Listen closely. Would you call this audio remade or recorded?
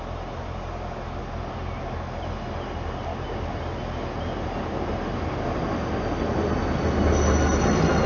recorded